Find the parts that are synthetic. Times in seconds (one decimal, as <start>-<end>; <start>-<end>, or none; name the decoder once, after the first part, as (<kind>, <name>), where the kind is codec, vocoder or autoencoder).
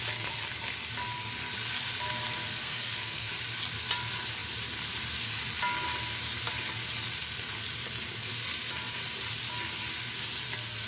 2.6-3.3 (codec, SNAC)